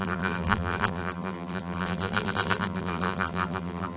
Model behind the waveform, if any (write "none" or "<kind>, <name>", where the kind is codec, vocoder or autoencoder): vocoder, BigVGAN v2